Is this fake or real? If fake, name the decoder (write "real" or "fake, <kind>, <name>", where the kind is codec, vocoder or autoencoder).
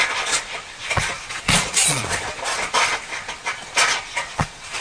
fake, vocoder, Vocos